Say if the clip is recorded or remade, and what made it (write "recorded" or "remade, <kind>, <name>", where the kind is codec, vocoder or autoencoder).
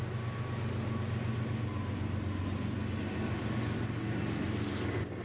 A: recorded